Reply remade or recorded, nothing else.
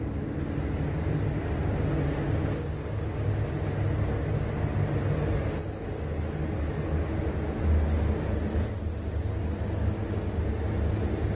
recorded